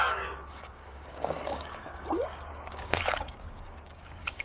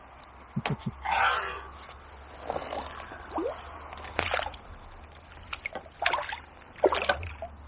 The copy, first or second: first